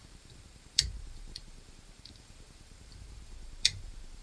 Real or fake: fake